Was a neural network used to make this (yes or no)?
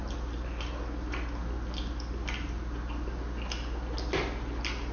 no